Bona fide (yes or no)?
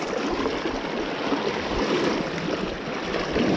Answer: yes